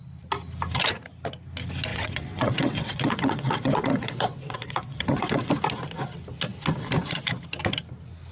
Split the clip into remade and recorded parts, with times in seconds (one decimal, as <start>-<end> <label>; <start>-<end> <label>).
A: 0.0-1.9 recorded; 1.9-5.5 remade; 5.5-8.3 recorded

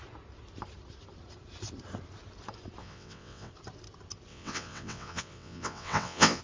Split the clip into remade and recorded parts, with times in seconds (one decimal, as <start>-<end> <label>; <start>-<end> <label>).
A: 0.0-2.8 recorded; 2.8-3.5 remade; 3.5-4.3 recorded; 4.3-6.4 remade

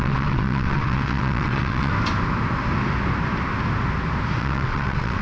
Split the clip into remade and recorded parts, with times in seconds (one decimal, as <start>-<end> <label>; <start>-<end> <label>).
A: 0.0-1.9 remade; 1.9-4.4 recorded; 4.4-5.2 remade

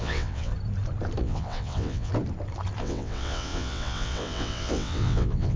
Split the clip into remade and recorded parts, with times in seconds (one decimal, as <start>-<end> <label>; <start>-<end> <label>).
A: 0.0-0.5 remade; 0.5-1.2 recorded; 1.2-2.1 remade; 2.1-2.8 recorded; 2.8-5.6 remade

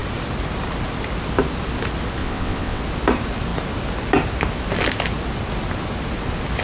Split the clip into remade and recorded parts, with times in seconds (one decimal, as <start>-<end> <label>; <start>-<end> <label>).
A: 0.0-2.2 recorded; 2.2-2.8 remade; 2.8-6.6 recorded